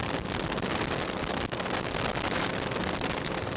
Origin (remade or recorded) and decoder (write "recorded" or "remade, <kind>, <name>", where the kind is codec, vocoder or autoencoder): recorded